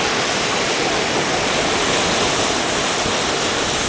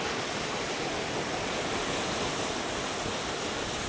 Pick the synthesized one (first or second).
second